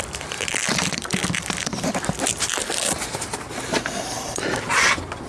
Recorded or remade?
remade